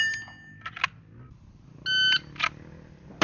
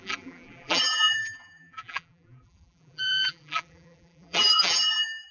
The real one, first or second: first